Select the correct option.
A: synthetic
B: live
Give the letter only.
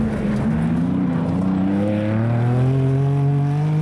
B